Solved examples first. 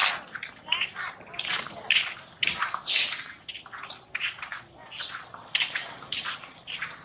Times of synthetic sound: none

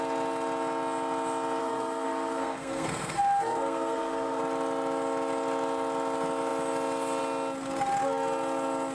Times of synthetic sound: 1.6-4.4

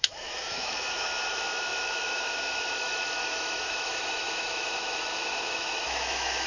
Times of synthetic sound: 0.0-6.5